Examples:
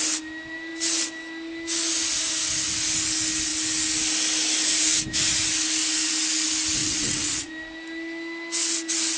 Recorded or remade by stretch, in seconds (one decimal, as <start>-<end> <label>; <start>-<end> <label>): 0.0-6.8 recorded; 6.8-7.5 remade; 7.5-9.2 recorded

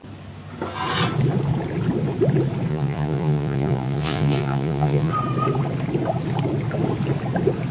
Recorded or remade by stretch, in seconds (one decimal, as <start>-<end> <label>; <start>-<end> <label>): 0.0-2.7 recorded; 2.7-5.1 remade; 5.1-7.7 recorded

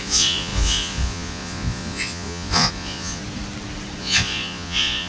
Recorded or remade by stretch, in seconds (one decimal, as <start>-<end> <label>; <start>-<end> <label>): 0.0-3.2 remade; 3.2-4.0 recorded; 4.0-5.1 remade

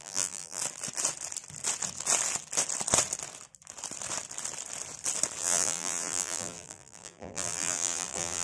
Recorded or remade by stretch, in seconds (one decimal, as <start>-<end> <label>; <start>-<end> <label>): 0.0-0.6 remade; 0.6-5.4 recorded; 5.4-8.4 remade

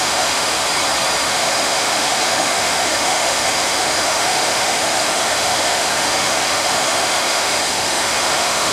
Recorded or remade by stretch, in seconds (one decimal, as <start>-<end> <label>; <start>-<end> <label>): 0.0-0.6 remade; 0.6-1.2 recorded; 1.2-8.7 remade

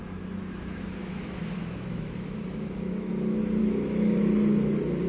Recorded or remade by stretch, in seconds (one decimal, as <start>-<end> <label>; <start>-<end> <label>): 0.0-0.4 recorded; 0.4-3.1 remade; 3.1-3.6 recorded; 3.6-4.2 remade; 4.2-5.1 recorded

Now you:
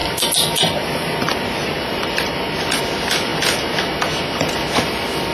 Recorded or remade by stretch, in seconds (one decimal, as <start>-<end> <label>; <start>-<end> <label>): 0.0-2.8 remade; 2.8-5.3 recorded